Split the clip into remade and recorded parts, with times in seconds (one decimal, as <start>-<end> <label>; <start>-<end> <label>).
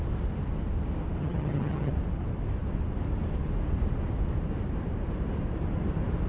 0.0-1.2 recorded; 1.2-1.9 remade; 1.9-6.3 recorded